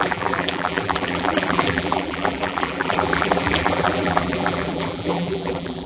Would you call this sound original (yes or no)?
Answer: no